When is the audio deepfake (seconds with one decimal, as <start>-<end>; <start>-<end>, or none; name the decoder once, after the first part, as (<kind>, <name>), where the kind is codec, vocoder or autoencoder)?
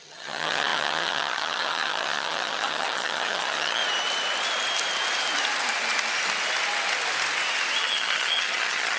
0.0-3.8 (vocoder, HiFi-GAN); 7.8-9.0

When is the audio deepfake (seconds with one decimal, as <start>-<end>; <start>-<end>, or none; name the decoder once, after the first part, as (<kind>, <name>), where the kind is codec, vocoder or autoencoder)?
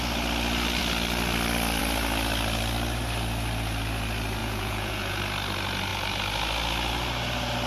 4.4-5.2 (vocoder, Vocos)